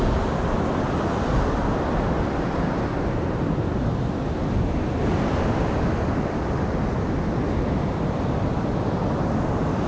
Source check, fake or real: real